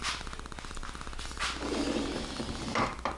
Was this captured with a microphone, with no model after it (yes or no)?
yes